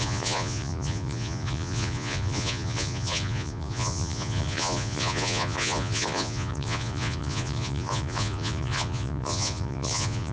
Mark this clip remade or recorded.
remade